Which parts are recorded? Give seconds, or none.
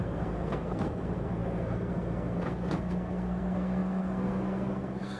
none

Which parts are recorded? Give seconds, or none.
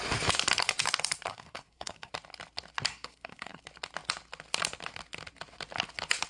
0.0-1.3; 2.1-2.9; 3.6-6.3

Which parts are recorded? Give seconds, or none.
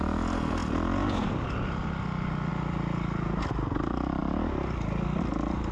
0.0-5.7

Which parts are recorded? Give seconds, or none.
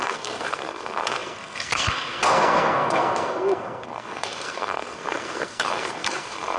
none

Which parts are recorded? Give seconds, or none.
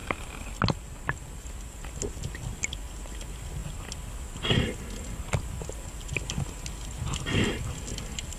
0.0-8.4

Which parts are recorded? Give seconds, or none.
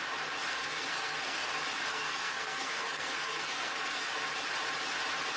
0.0-0.5; 1.5-1.9; 4.1-5.4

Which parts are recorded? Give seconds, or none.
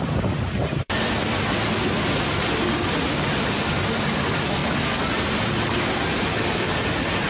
0.0-7.3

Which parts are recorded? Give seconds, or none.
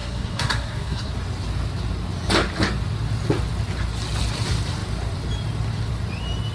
1.1-6.5